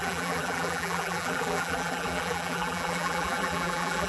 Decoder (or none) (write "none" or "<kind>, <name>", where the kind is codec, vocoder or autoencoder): vocoder, BigVGAN v2